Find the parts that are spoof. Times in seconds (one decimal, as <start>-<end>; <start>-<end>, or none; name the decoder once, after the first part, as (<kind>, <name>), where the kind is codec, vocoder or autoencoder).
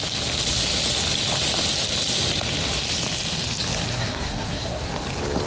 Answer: 3.9-4.9 (codec, SNAC)